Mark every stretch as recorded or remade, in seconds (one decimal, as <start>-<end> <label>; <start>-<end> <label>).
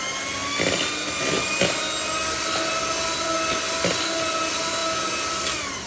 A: 0.0-5.9 recorded